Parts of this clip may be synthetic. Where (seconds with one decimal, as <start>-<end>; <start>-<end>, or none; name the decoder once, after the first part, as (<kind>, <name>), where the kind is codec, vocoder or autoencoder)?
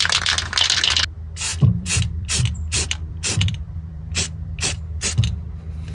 1.5-5.0 (vocoder, BigVGAN v2)